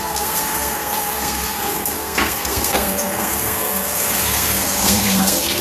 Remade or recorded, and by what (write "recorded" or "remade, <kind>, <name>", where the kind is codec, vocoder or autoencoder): remade, codec, SNAC